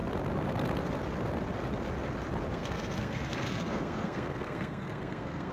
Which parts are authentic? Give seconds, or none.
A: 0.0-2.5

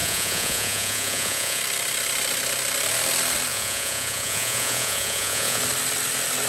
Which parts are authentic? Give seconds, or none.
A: 1.6-3.5; 5.6-6.5

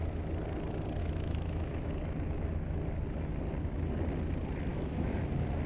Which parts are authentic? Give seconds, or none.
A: 0.0-1.0; 1.9-4.7; 5.2-5.7

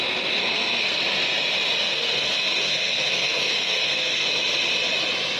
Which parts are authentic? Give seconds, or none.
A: 0.0-0.4; 1.0-1.8; 4.3-5.4